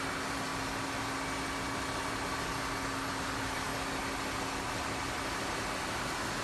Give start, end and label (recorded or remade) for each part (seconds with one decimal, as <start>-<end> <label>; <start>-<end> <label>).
0.0-0.5 remade; 0.5-3.1 recorded; 3.1-3.7 remade; 3.7-5.8 recorded; 5.8-6.4 remade